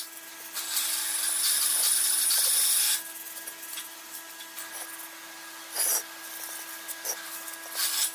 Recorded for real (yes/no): yes